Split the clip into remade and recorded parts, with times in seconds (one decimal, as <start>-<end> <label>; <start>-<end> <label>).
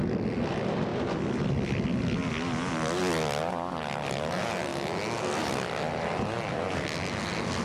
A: 0.0-7.6 recorded